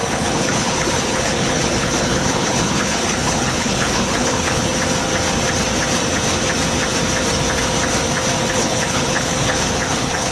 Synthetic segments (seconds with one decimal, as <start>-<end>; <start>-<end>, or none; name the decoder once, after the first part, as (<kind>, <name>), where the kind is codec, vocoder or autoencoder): 0.0-4.7 (codec, HILCodec); 8.5-10.3